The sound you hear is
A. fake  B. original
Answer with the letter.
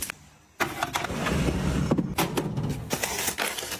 B